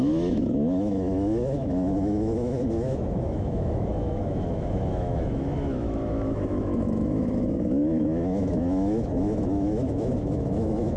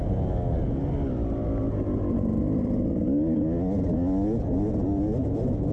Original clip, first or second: second